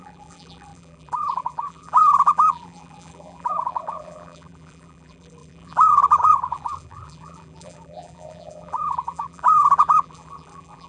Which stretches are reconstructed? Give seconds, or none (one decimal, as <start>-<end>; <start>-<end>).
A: 0.0-10.9